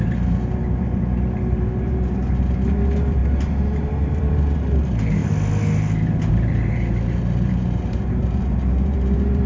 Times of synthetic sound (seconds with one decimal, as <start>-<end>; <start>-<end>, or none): 0.0-5.2; 6.3-9.5